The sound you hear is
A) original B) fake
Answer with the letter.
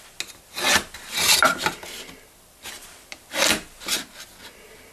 A